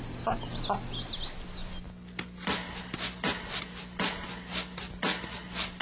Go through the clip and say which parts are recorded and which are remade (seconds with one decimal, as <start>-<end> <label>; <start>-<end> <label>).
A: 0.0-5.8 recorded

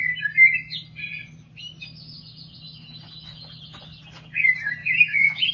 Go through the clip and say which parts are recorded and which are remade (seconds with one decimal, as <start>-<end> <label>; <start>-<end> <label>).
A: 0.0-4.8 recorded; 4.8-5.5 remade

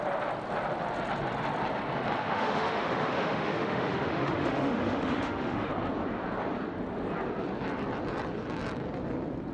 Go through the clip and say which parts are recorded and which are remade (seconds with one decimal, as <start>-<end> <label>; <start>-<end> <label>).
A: 0.0-2.2 recorded; 2.2-5.7 remade; 5.7-9.5 recorded

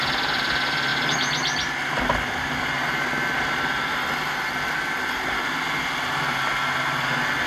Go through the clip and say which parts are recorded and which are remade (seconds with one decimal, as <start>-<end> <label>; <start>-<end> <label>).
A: 0.0-7.5 recorded

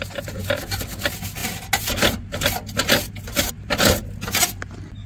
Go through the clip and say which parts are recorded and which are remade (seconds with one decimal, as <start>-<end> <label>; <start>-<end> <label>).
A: 0.0-5.1 recorded

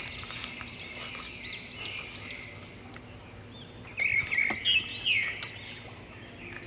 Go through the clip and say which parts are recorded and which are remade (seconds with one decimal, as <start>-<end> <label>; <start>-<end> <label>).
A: 0.0-6.7 recorded

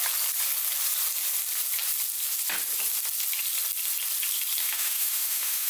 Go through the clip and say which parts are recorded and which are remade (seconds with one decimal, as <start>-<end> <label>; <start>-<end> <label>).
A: 0.0-4.6 recorded; 4.6-5.7 remade

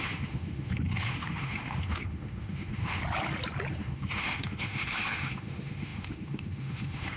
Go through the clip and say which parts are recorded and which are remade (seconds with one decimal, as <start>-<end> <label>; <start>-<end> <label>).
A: 0.0-3.0 remade; 3.0-3.7 recorded; 3.7-7.2 remade